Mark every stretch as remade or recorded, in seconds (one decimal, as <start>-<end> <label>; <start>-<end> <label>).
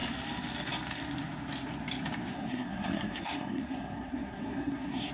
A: 0.0-2.3 recorded; 2.3-5.1 remade